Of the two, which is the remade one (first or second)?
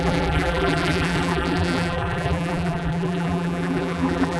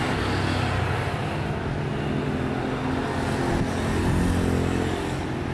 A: first